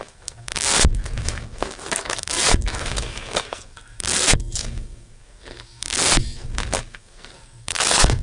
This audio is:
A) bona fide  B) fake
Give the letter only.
B